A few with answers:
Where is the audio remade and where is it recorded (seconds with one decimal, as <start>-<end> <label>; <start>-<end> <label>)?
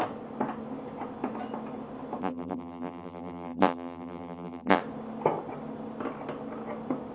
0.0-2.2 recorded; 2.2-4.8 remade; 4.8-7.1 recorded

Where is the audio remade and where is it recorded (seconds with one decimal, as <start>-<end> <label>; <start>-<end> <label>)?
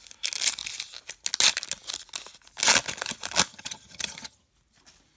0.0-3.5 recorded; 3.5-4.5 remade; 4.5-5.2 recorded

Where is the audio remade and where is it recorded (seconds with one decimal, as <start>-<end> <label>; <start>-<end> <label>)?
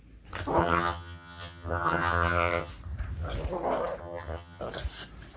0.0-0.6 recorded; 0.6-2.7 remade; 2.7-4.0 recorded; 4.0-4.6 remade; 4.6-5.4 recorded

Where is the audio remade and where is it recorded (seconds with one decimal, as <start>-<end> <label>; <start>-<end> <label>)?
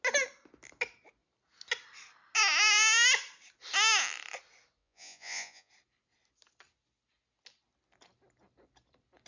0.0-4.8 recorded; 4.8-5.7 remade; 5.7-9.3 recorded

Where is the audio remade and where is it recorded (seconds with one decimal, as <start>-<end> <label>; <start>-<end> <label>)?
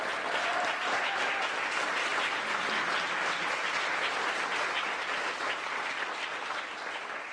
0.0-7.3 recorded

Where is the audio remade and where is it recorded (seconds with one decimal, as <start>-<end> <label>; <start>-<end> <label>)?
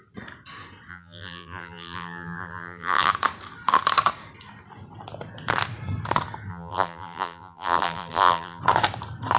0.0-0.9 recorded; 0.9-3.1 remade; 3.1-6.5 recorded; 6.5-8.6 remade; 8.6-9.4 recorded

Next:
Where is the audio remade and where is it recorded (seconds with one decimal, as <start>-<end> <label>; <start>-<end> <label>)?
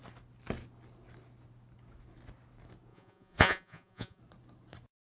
0.0-2.9 recorded; 2.9-4.2 remade; 4.2-5.0 recorded